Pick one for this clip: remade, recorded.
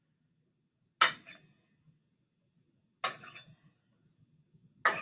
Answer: recorded